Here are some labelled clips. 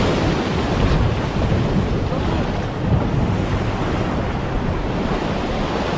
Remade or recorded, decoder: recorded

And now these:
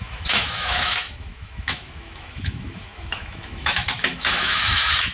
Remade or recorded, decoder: remade, autoencoder, DAC-VAE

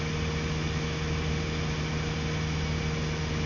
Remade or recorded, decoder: recorded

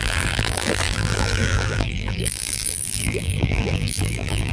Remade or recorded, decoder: remade, vocoder, BigVGAN v2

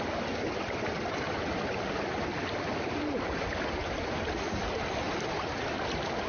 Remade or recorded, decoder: recorded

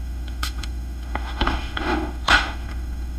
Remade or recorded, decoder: remade, autoencoder, DAC-VAE